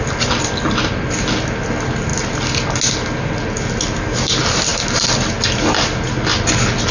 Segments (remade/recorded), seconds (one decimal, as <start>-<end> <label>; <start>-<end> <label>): 0.0-6.9 recorded

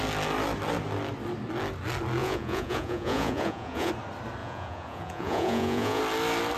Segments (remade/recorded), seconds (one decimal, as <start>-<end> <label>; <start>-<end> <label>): 0.0-2.2 recorded; 2.2-3.9 remade; 3.9-4.4 recorded; 4.4-6.0 remade; 6.0-6.6 recorded

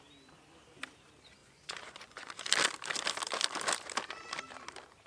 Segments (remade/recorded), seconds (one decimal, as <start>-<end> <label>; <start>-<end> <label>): 0.0-1.4 recorded; 1.4-2.3 remade; 2.3-5.1 recorded